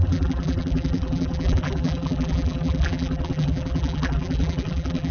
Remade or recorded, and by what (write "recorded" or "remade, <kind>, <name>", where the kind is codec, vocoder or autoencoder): remade, vocoder, BigVGAN v2